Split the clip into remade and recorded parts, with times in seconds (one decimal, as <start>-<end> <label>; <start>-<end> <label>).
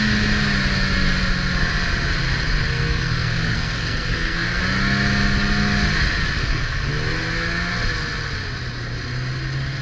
0.0-2.6 recorded; 2.6-4.6 remade; 4.6-6.4 recorded; 6.4-6.9 remade; 6.9-9.8 recorded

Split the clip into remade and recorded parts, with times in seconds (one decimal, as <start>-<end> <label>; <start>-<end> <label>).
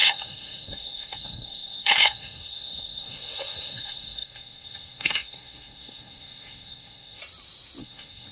0.0-7.2 remade; 7.2-7.8 recorded; 7.8-8.3 remade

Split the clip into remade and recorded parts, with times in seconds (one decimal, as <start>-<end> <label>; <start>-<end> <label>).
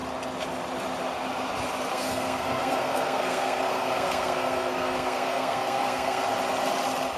0.0-1.9 recorded; 1.9-6.2 remade; 6.2-7.2 recorded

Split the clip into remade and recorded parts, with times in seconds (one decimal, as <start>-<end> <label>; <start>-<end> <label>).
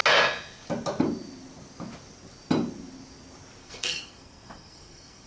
0.0-3.6 recorded; 3.6-5.3 remade